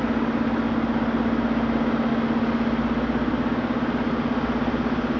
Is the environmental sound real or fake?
real